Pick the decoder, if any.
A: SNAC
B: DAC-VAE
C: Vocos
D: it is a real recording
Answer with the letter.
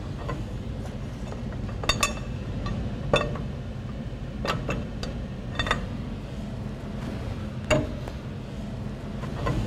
D